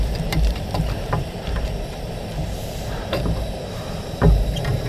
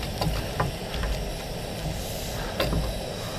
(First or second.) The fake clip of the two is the first